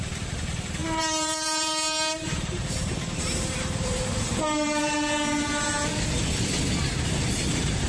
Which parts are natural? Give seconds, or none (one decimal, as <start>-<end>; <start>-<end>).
5.9-7.5